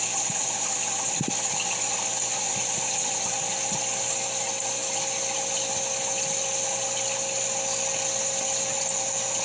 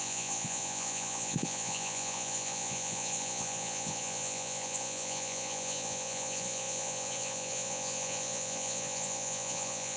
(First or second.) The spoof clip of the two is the second